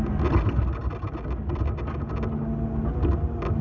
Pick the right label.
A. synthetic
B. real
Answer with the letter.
B